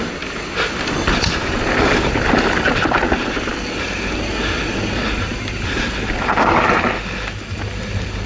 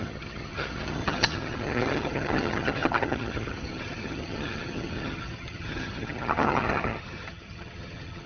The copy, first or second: second